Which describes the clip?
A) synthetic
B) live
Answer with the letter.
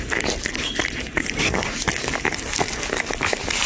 B